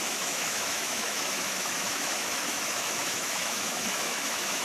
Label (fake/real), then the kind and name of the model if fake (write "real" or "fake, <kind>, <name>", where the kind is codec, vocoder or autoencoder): fake, autoencoder, DAC-VAE